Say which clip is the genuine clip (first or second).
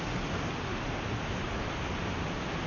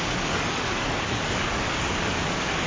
first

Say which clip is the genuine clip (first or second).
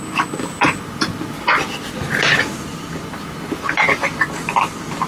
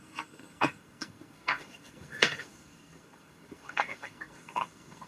first